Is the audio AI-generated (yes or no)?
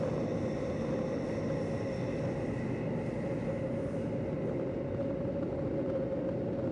no